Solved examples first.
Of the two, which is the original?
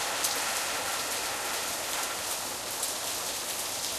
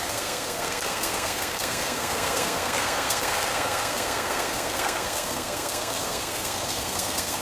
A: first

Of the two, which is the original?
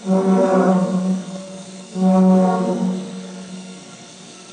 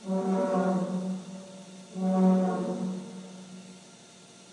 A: second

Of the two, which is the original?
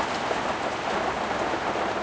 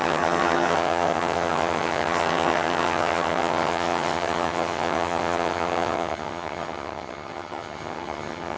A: first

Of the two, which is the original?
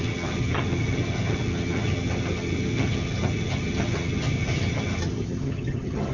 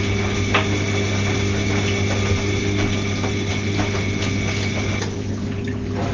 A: second